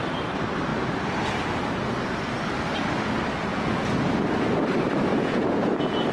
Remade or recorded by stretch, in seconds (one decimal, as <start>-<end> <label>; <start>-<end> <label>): 0.0-3.5 recorded; 3.5-4.1 remade; 4.1-5.1 recorded; 5.1-6.1 remade